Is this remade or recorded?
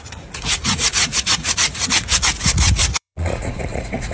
remade